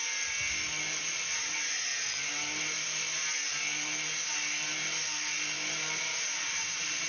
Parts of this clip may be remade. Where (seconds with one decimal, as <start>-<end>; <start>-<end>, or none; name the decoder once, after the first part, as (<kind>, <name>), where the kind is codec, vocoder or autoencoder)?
1.1-1.9 (vocoder, Vocos); 6.0-7.1